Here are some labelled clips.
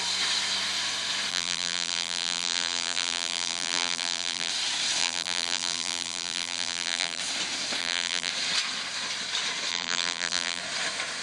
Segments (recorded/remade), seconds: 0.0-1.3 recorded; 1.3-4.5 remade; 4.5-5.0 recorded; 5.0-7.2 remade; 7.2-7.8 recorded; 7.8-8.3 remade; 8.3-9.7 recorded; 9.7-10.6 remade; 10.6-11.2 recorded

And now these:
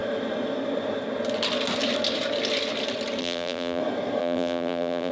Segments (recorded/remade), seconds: 0.0-3.2 recorded; 3.2-3.8 remade; 3.8-4.2 recorded; 4.2-5.1 remade

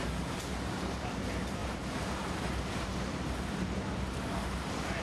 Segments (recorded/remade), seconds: 0.0-5.0 remade

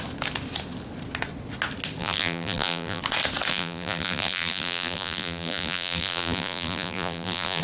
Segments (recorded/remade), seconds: 0.0-2.0 recorded; 2.0-3.0 remade; 3.0-3.5 recorded; 3.5-7.6 remade

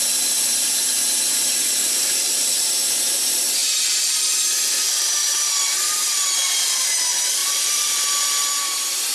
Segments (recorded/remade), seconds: 0.0-1.5 recorded; 1.5-2.5 remade; 2.5-7.4 recorded; 7.4-7.9 remade; 7.9-9.1 recorded

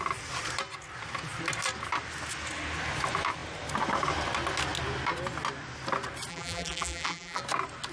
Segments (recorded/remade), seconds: 0.0-6.3 recorded; 6.3-7.4 remade; 7.4-7.9 recorded